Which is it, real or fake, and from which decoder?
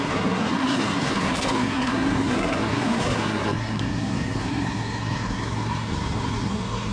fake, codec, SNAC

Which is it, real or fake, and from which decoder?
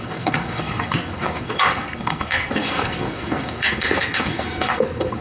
fake, codec, SNAC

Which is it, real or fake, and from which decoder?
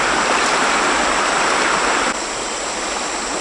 real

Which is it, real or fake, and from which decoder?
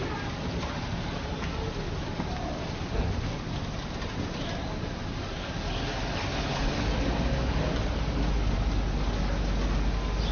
real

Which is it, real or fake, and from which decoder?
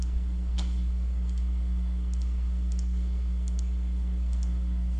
fake, codec, SNAC